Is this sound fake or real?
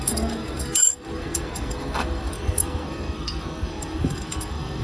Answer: fake